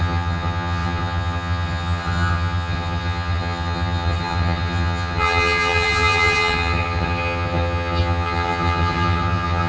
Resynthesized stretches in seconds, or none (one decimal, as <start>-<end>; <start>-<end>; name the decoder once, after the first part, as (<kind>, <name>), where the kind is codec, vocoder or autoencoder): 0.0-9.7 (vocoder, HiFi-GAN)